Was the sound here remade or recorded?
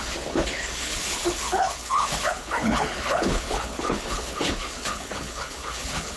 remade